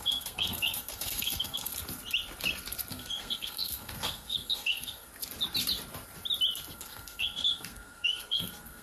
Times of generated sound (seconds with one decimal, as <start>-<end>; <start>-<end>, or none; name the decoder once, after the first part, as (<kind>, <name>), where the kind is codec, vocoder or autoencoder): 0.0-1.7 (codec, SNAC); 2.9-5.1; 6.7-8.8